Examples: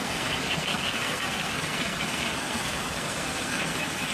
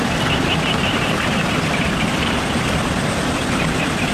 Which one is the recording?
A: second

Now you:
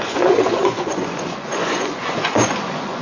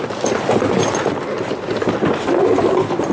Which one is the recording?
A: second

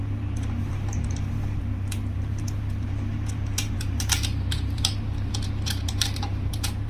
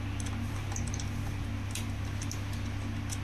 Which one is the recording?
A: second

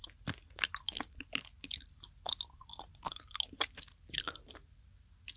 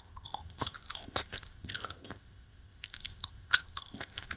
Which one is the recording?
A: first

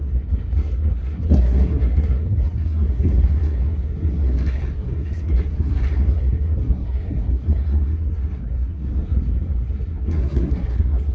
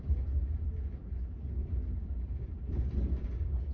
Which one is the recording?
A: second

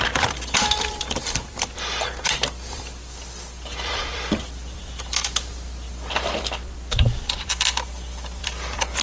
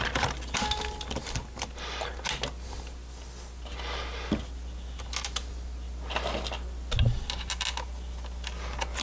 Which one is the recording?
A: second